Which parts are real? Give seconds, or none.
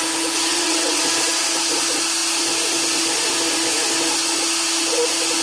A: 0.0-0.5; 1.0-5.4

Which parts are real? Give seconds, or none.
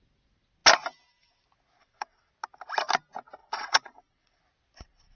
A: 0.0-1.8; 2.3-3.4; 4.4-5.2